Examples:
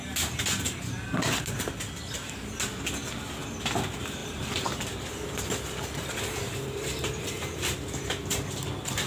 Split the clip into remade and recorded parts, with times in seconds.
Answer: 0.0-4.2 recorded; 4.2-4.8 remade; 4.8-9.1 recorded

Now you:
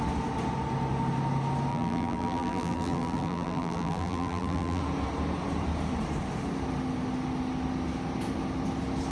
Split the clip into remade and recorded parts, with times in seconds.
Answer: 0.0-1.7 recorded; 1.7-4.8 remade; 4.8-9.1 recorded

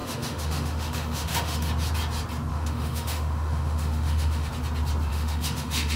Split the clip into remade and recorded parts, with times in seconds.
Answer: 0.0-1.7 remade; 1.7-2.5 recorded; 2.5-4.5 remade; 4.5-5.1 recorded; 5.1-6.0 remade